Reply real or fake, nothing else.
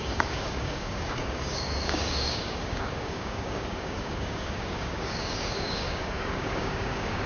fake